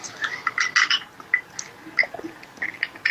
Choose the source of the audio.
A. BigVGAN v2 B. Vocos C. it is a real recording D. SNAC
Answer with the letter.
C